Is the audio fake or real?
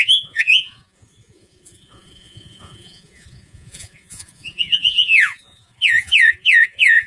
fake